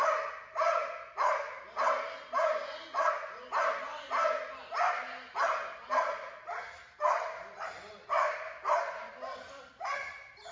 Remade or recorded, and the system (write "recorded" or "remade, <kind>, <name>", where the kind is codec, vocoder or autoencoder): recorded